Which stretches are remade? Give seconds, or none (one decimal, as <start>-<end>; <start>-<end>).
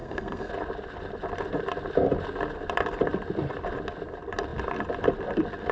0.0-0.5